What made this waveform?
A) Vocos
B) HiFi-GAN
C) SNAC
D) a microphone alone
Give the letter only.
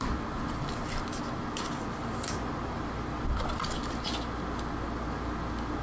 D